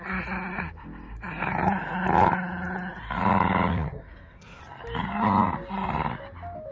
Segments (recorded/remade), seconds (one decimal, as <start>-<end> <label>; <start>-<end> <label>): 0.0-3.7 recorded; 3.7-4.6 remade; 4.6-6.7 recorded

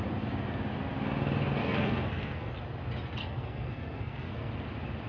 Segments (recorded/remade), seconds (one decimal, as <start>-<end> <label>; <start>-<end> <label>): 0.0-1.6 recorded; 1.6-2.5 remade; 2.5-3.2 recorded; 3.2-4.5 remade; 4.5-5.1 recorded

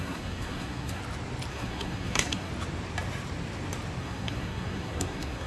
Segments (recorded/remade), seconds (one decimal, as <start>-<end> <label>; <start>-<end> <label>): 0.0-1.0 remade; 1.0-1.5 recorded; 1.5-2.5 remade; 2.5-4.0 recorded; 4.0-5.5 remade

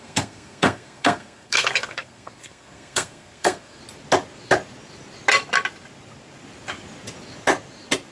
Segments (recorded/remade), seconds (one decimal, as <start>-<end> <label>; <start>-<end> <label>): 0.0-3.8 remade; 3.8-8.1 recorded

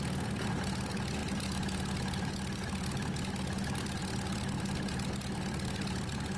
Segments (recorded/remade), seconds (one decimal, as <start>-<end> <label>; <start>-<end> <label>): 0.0-6.4 recorded

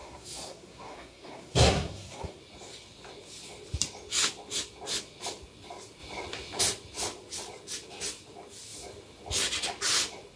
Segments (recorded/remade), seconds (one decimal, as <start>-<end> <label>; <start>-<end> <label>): 0.0-2.4 remade; 2.4-10.4 recorded

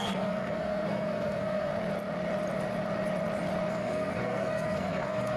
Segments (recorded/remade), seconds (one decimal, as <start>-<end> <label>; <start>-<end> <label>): 0.0-1.7 remade; 1.7-3.7 recorded; 3.7-5.4 remade